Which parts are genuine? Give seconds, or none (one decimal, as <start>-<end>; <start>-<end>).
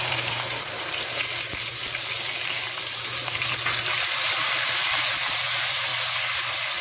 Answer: 1.8-2.4; 5.9-6.8